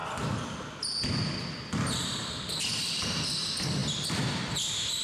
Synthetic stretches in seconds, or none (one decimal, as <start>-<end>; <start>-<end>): none